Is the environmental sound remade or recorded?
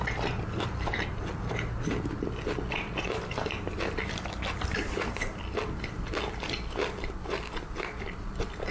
recorded